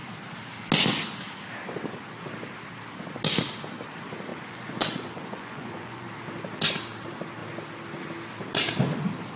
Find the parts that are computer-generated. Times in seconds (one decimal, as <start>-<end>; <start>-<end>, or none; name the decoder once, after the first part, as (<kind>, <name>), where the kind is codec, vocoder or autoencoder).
4.3-6.1 (vocoder, Vocos)

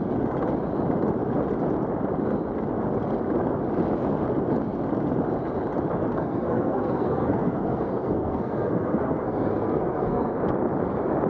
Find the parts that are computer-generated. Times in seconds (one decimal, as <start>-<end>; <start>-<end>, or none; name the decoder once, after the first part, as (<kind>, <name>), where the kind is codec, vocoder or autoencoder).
6.1-10.3 (codec, SNAC)